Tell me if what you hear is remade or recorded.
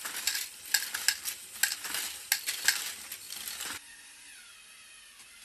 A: recorded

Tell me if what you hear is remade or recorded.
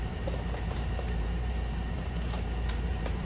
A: remade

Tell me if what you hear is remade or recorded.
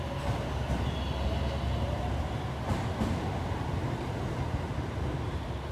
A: remade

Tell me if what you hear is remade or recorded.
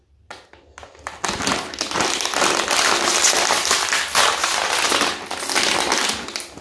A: recorded